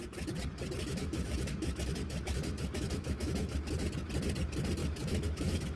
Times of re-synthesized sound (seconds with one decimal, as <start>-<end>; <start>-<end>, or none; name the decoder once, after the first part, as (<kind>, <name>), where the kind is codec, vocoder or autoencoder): 0.9-3.7 (autoencoder, DAC-VAE); 4.8-5.8